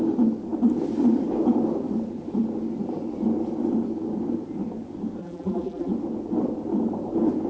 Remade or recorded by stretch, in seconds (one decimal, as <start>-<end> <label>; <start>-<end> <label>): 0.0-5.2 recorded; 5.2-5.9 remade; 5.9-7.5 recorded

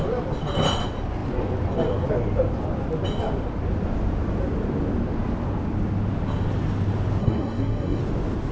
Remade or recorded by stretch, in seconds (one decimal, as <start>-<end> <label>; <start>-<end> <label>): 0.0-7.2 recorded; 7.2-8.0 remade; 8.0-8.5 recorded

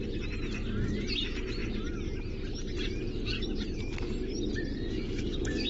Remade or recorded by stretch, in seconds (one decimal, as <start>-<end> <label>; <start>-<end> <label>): 0.0-4.7 recorded; 4.7-5.7 remade

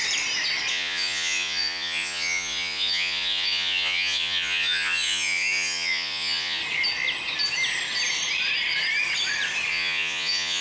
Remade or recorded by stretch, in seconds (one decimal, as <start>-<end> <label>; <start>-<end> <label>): 0.0-0.7 recorded; 0.7-6.6 remade; 6.6-9.7 recorded; 9.7-10.6 remade

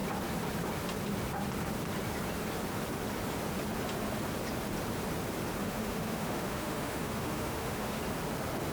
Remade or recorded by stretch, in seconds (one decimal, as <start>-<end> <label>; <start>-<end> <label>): 0.0-5.6 recorded; 5.6-8.0 remade; 8.0-8.7 recorded

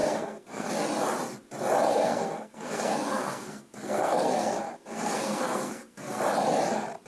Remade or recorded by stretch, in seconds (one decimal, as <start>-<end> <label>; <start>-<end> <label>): 0.0-0.7 remade; 0.7-1.9 recorded; 1.9-6.2 remade; 6.2-7.1 recorded